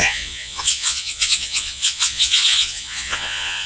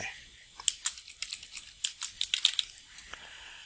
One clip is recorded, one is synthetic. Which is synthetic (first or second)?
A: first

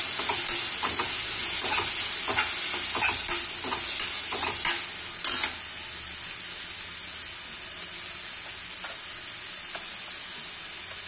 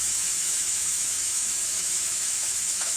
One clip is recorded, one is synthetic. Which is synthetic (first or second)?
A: second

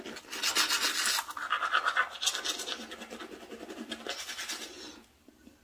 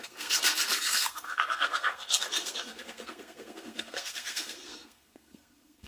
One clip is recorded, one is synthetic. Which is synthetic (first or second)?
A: second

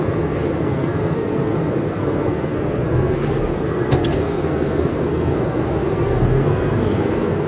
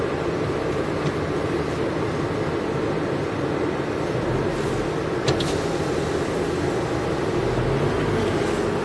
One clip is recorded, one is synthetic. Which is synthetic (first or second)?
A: first